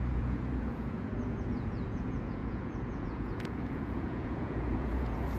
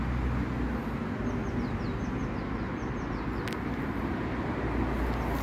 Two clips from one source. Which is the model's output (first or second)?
first